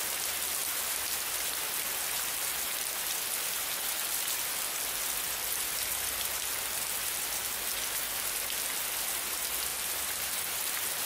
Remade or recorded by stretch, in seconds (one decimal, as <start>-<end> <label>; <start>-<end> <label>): 0.0-9.7 recorded; 9.7-10.6 remade; 10.6-11.1 recorded